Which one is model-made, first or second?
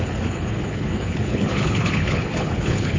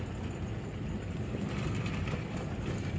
first